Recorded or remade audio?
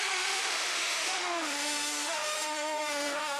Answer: remade